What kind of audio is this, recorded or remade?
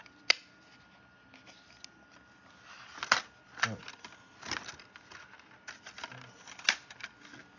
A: recorded